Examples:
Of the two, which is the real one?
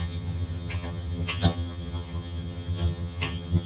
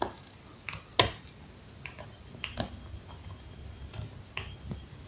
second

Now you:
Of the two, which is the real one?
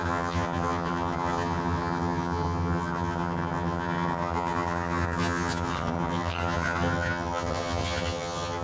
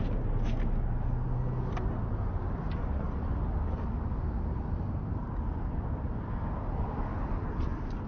second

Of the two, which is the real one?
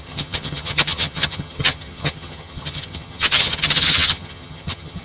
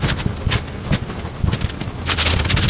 second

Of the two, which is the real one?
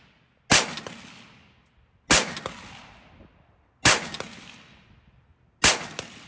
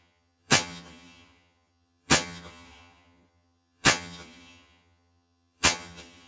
first